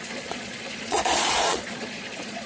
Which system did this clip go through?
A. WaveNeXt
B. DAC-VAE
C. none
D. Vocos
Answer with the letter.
D